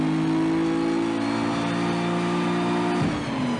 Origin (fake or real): real